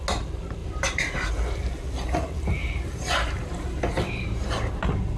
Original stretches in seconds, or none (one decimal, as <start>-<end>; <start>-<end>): 0.0-0.6; 1.3-2.6; 4.7-5.2